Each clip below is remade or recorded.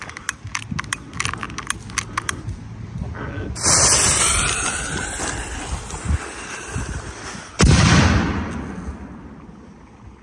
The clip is recorded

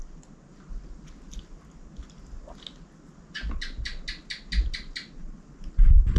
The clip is recorded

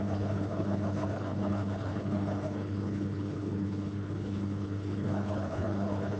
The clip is remade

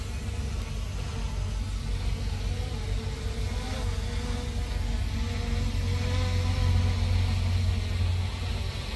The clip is recorded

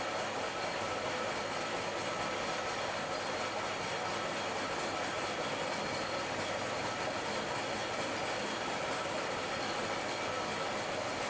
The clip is recorded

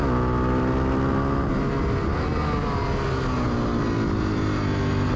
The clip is recorded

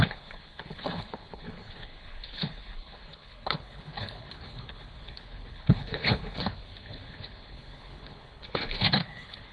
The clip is remade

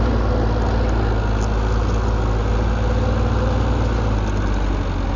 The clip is recorded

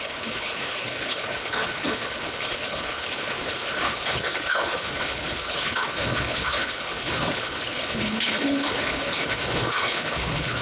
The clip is remade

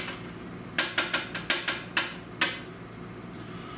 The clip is recorded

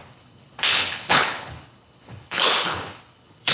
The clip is remade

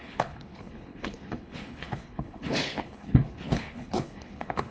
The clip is remade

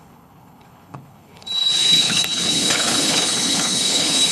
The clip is remade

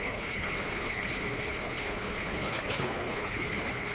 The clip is remade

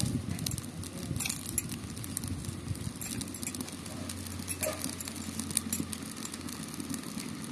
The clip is recorded